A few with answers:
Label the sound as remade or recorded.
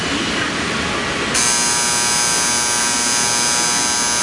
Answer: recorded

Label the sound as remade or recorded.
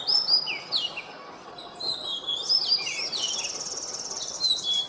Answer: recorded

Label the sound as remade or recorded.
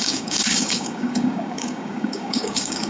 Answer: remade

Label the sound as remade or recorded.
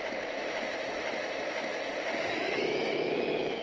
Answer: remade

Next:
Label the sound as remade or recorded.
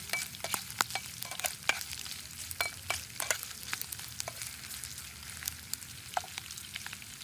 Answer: recorded